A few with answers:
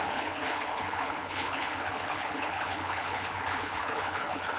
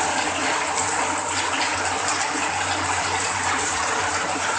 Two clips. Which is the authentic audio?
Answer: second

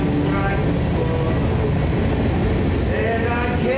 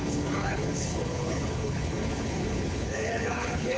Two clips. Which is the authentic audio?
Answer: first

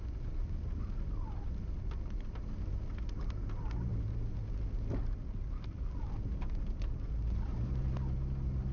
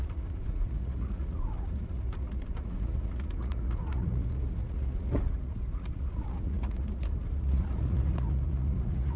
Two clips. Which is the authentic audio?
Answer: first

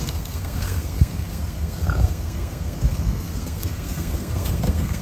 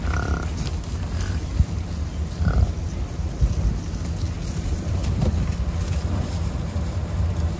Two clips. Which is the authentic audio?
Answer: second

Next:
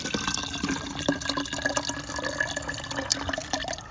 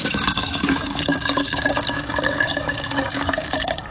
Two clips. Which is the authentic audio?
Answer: first